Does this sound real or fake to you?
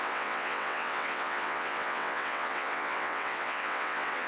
fake